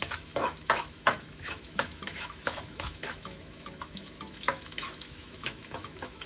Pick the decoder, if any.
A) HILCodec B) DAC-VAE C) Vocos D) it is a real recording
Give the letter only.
B